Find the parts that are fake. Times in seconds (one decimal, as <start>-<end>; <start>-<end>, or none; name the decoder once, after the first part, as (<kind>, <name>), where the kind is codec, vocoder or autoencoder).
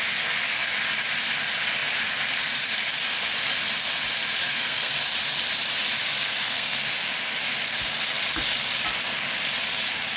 4.4-4.9 (codec, SNAC); 6.3-6.8